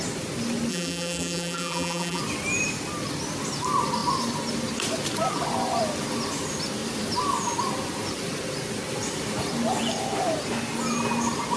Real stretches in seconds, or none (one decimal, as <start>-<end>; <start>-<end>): 0.0-0.7; 2.2-11.6